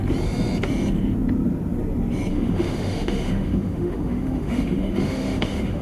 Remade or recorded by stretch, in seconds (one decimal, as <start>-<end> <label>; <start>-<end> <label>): 0.0-2.3 recorded; 2.3-5.8 remade